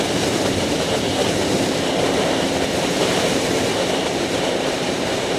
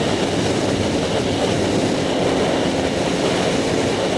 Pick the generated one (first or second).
first